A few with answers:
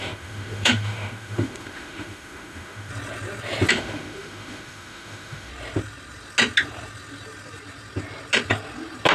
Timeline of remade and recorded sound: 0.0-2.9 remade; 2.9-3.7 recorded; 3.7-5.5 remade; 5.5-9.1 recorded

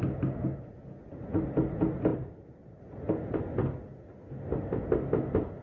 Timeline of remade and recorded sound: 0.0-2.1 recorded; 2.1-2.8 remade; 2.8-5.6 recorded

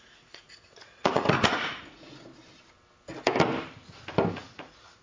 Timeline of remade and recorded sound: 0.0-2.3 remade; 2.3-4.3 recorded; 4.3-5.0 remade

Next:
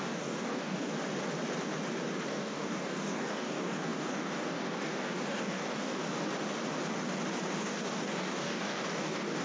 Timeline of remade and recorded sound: 0.0-0.9 remade; 0.9-2.3 recorded; 2.3-6.0 remade; 6.0-7.6 recorded; 7.6-9.4 remade

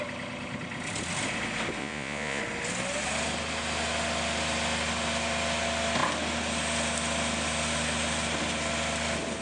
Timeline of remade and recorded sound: 0.0-1.8 recorded; 1.8-2.4 remade; 2.4-9.4 recorded

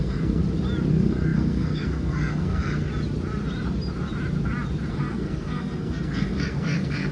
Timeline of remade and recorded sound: 0.0-0.4 remade; 0.4-0.9 recorded; 0.9-2.9 remade; 2.9-4.9 recorded; 4.9-7.1 remade